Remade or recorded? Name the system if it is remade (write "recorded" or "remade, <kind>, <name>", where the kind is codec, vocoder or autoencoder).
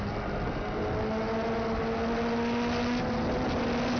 recorded